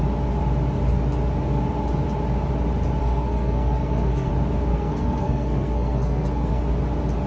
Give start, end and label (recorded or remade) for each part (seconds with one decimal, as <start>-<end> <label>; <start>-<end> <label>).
0.0-3.0 recorded; 3.0-4.3 remade; 4.3-4.7 recorded; 4.7-6.6 remade; 6.6-7.3 recorded